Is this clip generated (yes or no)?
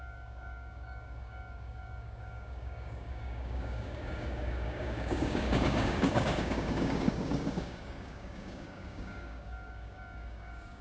yes